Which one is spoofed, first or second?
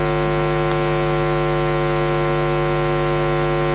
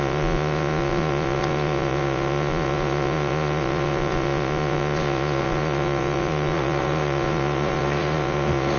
second